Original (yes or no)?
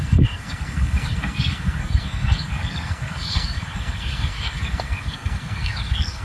no